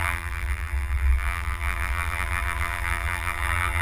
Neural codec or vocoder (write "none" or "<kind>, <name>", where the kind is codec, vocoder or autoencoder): vocoder, BigVGAN v2